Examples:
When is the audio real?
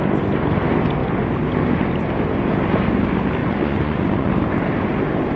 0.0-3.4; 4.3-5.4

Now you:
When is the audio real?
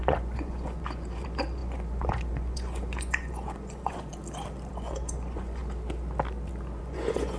4.1-4.7; 5.6-6.8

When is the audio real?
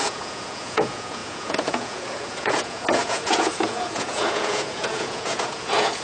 none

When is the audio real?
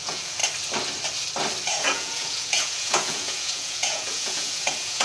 0.4-1.7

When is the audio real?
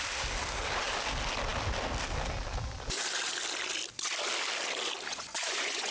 0.0-5.1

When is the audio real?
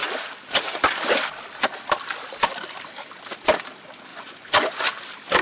0.0-4.1; 4.9-5.4